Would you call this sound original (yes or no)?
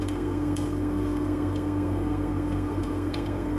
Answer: no